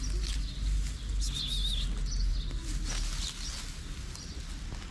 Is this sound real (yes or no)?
yes